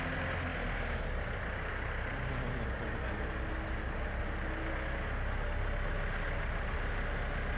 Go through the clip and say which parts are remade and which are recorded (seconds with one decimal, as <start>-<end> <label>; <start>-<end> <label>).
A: 0.0-7.6 recorded